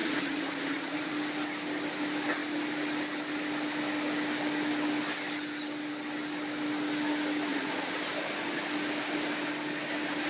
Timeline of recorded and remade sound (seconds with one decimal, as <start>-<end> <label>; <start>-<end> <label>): 0.0-1.1 remade; 1.1-7.5 recorded; 7.5-8.0 remade; 8.0-10.3 recorded